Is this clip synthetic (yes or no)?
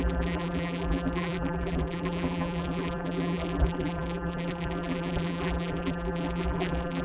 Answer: yes